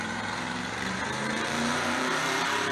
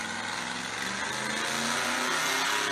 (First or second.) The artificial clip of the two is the first